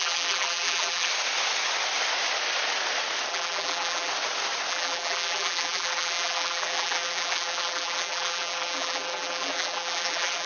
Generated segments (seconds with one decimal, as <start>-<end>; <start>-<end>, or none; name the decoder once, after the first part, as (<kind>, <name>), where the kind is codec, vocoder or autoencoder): 0.0-1.1 (vocoder, BigVGAN v2); 3.3-4.1; 4.7-10.5